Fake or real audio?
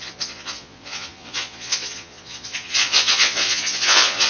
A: fake